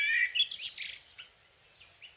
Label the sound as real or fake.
real